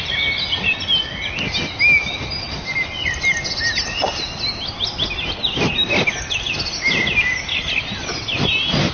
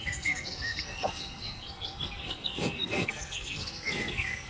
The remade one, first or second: second